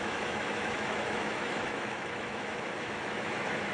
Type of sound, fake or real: fake